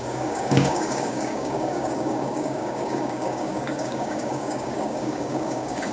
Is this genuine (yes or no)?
no